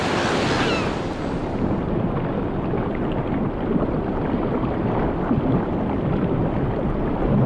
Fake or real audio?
real